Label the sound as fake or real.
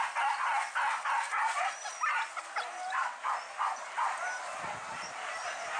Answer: real